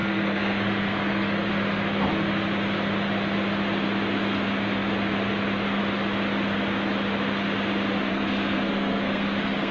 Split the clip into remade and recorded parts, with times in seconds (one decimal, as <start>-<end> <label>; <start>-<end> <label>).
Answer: 0.0-1.5 remade; 1.5-8.1 recorded; 8.1-9.7 remade